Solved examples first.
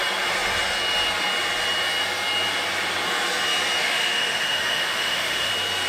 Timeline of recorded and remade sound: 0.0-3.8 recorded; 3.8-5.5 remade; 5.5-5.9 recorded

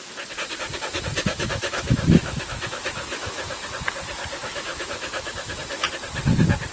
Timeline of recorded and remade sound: 0.0-1.2 recorded; 1.2-3.6 remade; 3.6-4.4 recorded; 4.4-5.6 remade; 5.6-6.7 recorded